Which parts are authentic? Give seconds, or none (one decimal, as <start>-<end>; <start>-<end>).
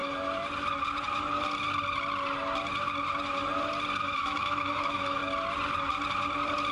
0.0-4.0; 5.2-6.7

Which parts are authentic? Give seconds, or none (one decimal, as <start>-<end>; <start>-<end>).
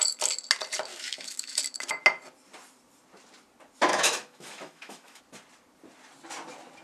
0.0-0.9; 1.6-3.9; 5.2-6.8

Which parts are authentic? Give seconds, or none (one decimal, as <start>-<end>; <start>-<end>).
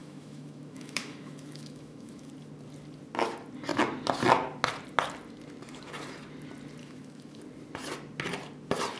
2.3-6.8; 7.4-9.0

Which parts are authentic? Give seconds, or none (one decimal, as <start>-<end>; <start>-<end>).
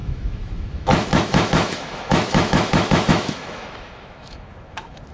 none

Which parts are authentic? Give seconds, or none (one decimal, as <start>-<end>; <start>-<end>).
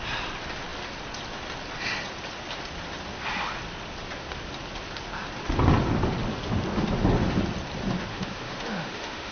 0.0-8.1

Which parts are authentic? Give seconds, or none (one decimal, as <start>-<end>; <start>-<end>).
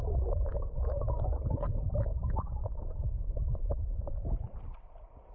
0.0-0.5; 2.6-5.3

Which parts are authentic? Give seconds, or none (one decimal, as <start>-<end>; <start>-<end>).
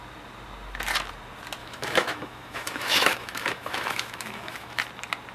0.0-1.6; 4.8-5.3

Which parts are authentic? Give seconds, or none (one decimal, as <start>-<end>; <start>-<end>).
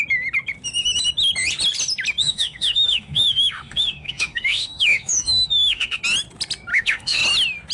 0.0-2.2; 6.0-6.7; 7.2-7.7